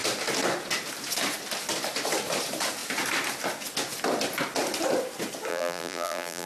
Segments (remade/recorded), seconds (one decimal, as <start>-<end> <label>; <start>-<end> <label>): 0.0-5.5 recorded; 5.5-6.5 remade